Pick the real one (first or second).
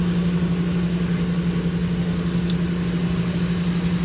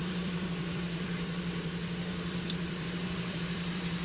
first